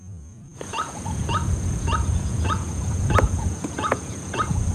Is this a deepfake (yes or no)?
yes